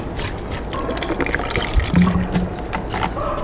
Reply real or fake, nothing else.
real